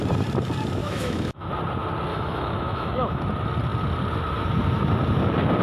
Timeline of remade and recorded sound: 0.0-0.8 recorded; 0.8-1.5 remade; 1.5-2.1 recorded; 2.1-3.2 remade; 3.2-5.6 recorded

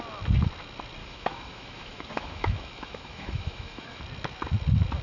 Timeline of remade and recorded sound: 0.0-1.0 recorded; 1.0-4.0 remade; 4.0-5.0 recorded

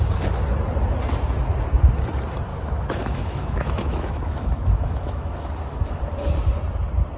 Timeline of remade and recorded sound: 0.0-2.5 recorded; 2.5-6.0 remade; 6.0-7.2 recorded

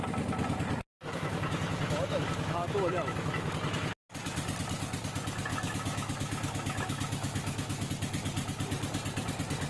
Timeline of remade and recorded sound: 0.0-0.9 recorded; 0.9-3.5 remade; 3.5-5.5 recorded; 5.5-7.9 remade; 7.9-9.7 recorded

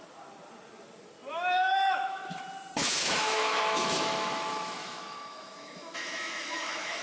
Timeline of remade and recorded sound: 0.0-1.3 recorded; 1.3-2.4 remade; 2.4-2.8 recorded; 2.8-7.0 remade